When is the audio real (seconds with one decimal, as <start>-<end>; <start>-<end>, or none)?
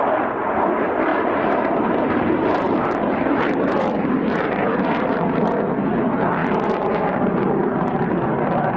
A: 0.0-1.1; 5.5-6.4; 8.1-8.8